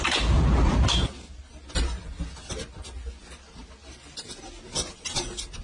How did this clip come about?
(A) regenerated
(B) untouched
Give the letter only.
B